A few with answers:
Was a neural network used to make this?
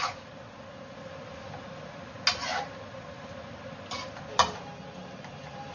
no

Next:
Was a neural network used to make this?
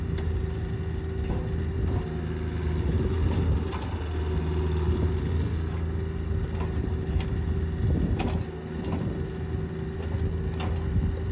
no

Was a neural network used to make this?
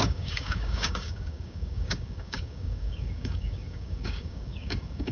yes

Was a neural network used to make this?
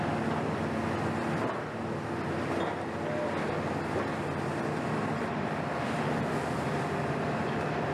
no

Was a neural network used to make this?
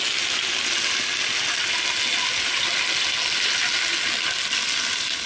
no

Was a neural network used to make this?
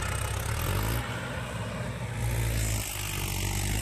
no